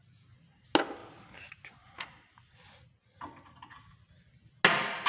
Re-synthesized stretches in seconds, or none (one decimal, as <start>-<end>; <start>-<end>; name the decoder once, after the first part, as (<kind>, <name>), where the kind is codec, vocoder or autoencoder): none